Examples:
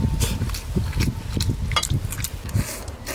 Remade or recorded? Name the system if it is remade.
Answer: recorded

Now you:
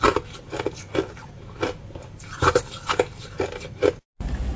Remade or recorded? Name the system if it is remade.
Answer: recorded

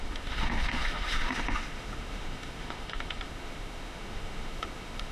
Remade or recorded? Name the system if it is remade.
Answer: remade, autoencoder, DAC-VAE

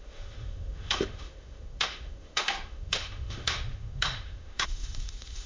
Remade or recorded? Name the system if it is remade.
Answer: remade, autoencoder, DAC-VAE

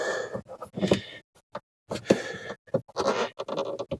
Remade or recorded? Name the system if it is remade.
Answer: recorded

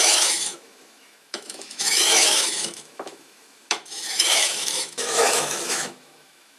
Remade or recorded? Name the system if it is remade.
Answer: remade, autoencoder, DAC-VAE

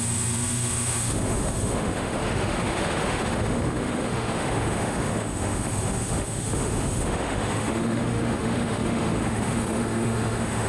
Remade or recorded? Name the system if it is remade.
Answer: remade, autoencoder, DAC-VAE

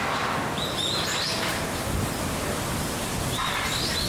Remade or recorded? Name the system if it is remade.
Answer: recorded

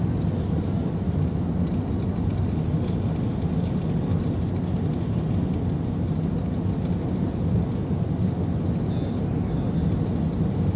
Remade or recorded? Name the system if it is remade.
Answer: recorded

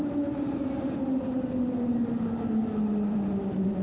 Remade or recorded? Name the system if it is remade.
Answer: recorded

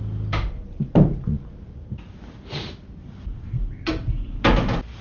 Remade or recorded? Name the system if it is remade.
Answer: recorded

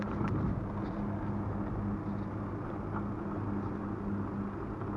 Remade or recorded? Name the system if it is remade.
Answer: recorded